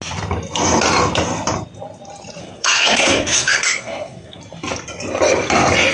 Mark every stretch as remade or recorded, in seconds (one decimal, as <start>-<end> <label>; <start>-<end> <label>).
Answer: 0.0-2.4 recorded; 2.4-4.4 remade; 4.4-5.9 recorded